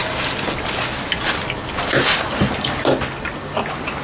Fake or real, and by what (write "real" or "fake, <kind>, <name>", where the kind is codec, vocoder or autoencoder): real